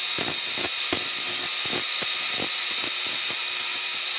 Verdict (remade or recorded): recorded